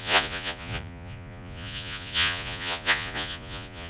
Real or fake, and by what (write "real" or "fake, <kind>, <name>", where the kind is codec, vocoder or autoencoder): fake, vocoder, Vocos